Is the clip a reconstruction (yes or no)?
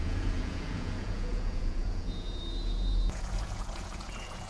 yes